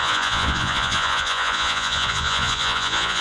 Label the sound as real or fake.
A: fake